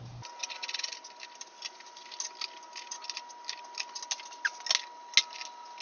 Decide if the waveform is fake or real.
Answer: real